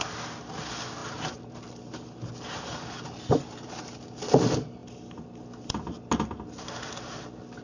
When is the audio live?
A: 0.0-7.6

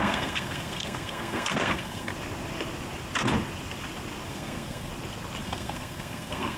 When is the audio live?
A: 2.1-4.3; 4.9-5.4

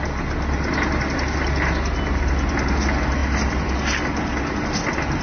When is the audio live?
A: 0.0-5.2

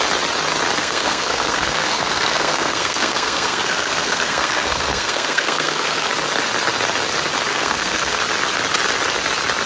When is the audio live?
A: 0.0-0.8; 6.1-7.5; 8.2-9.7

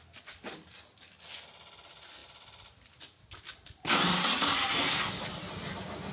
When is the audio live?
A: 0.0-6.1

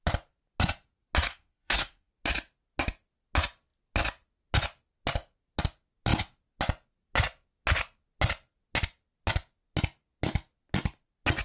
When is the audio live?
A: 0.0-1.3; 2.1-11.4